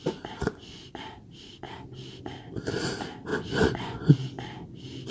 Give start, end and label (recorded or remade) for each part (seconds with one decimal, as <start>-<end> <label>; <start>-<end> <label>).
0.0-3.3 recorded; 3.3-4.1 remade; 4.1-5.1 recorded